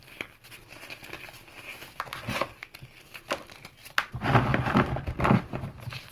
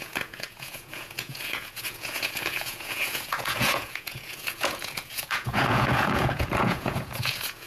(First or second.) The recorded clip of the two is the first